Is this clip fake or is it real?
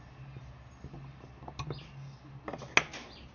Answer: real